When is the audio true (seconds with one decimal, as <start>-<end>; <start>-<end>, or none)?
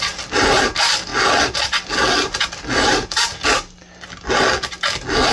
0.0-5.3